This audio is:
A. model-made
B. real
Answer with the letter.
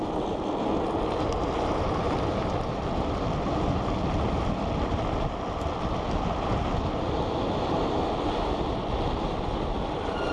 B